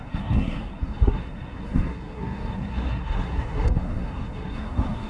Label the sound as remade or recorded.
remade